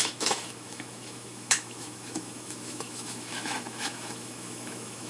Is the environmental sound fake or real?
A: fake